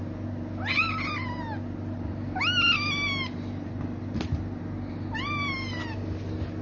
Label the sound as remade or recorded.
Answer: recorded